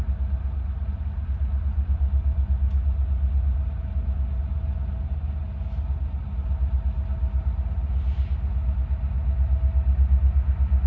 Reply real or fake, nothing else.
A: real